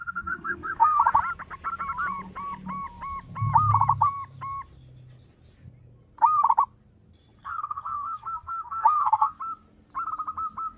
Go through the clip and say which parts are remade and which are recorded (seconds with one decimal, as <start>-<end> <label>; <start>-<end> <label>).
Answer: 0.0-1.0 remade; 1.0-7.4 recorded; 7.4-9.4 remade; 9.4-10.8 recorded